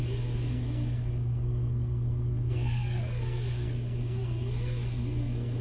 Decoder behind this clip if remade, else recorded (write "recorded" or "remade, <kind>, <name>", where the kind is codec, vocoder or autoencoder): remade, codec, SNAC